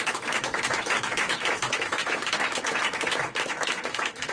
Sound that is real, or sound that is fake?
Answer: fake